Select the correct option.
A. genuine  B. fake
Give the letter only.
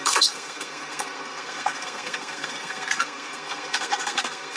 B